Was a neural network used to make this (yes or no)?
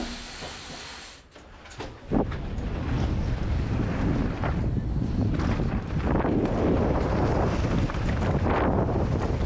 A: no